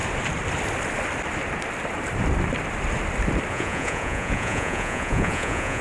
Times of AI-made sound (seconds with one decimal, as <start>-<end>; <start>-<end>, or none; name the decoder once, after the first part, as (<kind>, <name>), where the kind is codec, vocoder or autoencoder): 3.5-5.8 (vocoder, Vocos)